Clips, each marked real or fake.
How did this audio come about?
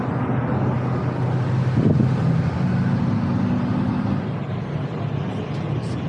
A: real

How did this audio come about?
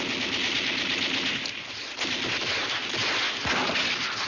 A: real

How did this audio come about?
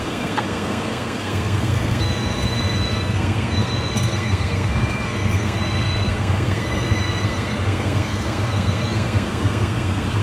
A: fake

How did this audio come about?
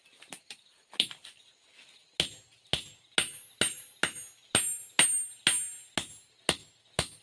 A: real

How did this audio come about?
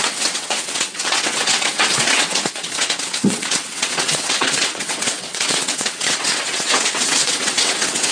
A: fake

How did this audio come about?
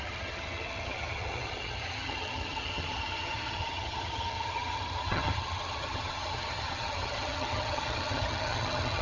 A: fake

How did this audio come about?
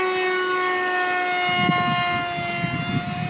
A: real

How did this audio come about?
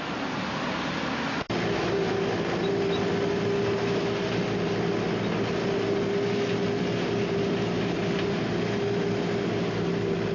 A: real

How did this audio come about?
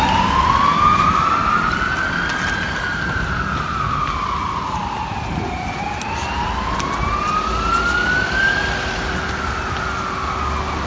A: real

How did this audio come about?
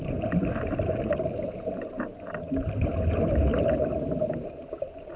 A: real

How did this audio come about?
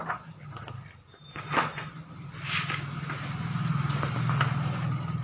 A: real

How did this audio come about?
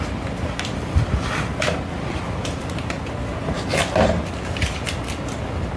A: real